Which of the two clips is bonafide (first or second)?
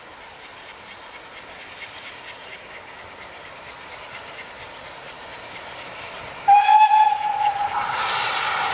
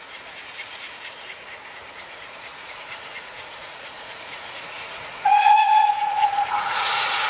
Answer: first